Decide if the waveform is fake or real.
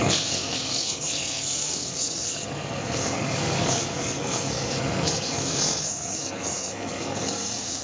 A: fake